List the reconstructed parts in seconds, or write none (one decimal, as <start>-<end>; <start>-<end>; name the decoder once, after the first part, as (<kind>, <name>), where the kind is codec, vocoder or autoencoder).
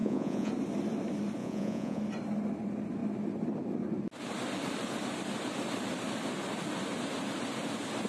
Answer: 0.0-0.5 (vocoder, Vocos); 1.4-2.0